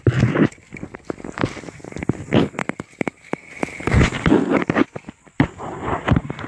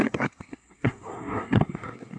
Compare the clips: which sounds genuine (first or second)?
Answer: first